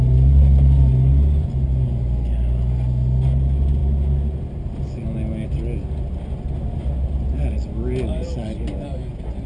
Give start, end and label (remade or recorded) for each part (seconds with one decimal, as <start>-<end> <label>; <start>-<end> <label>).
0.0-9.5 recorded